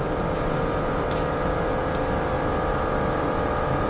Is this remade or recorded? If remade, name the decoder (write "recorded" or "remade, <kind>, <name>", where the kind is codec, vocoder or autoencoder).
recorded